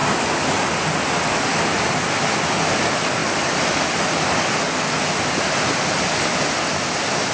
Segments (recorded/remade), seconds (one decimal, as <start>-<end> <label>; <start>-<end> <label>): 0.0-7.3 recorded